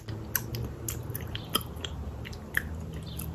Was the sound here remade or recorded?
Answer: recorded